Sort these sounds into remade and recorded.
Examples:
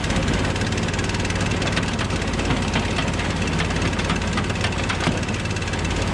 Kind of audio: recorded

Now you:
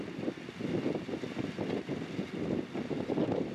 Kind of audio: recorded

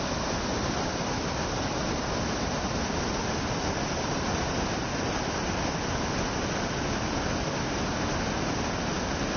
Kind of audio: recorded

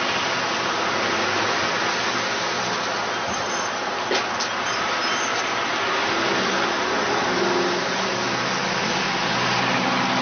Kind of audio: recorded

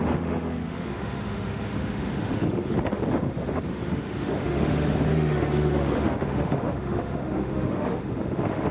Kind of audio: remade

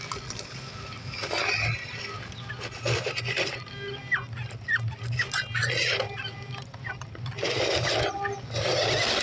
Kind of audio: recorded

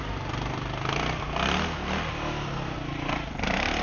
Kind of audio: recorded